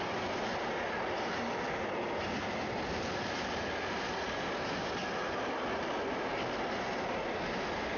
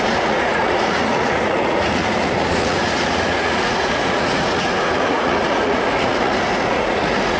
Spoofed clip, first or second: second